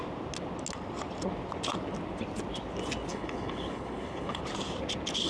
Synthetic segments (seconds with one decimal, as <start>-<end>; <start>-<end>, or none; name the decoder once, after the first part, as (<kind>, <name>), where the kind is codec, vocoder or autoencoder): 3.1-4.4 (codec, HILCodec)